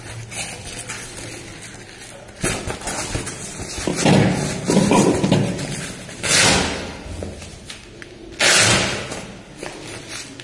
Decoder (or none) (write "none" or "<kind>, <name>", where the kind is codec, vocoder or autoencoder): none